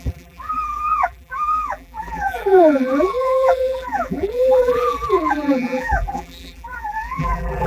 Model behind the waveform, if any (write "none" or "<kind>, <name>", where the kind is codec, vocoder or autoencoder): vocoder, BigVGAN v2